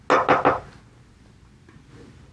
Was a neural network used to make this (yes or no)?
no